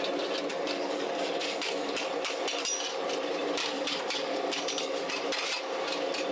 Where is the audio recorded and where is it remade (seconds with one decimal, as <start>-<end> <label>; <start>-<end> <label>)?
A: 0.0-0.5 recorded; 0.5-2.0 remade; 2.0-3.6 recorded; 3.6-5.1 remade; 5.1-6.3 recorded